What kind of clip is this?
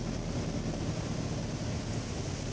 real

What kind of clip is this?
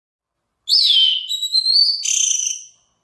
real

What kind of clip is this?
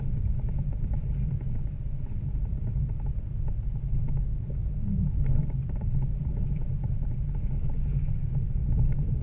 real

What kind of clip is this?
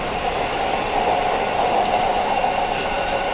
real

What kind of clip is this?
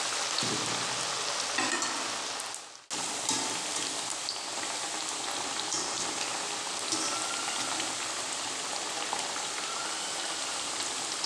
real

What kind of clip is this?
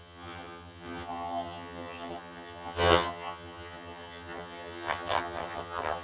fake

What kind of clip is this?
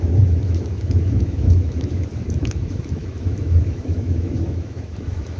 fake